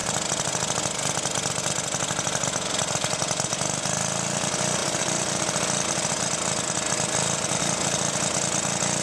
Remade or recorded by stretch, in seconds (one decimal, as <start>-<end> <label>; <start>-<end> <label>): 0.0-4.8 recorded; 4.8-8.0 remade; 8.0-9.0 recorded